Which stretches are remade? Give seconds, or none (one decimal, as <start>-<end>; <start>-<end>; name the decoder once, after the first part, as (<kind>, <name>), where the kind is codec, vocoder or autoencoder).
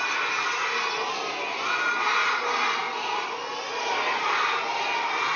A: none